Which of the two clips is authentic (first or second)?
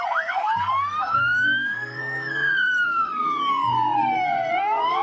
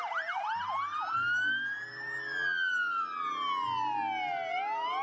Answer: second